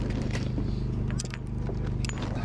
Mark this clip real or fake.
real